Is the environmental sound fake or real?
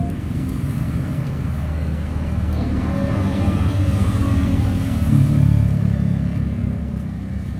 fake